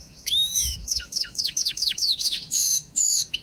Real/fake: fake